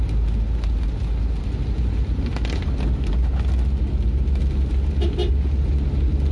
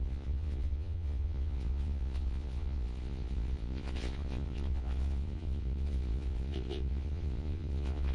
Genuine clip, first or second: first